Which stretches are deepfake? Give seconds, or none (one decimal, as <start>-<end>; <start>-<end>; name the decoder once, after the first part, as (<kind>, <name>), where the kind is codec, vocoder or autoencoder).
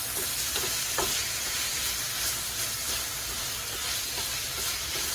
1.2-1.8 (vocoder, Vocos)